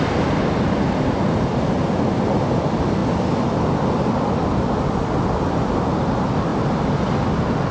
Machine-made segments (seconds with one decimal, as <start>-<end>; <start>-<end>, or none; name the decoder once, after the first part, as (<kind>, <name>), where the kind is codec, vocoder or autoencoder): none